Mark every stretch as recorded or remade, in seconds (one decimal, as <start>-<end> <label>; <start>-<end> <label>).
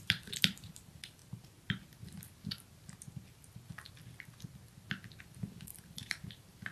0.0-1.2 remade; 1.2-5.2 recorded; 5.2-6.7 remade